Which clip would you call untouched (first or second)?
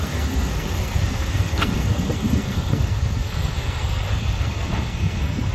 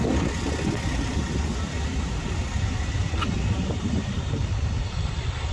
second